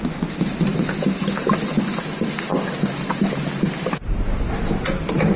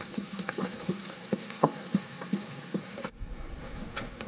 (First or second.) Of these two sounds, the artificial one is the second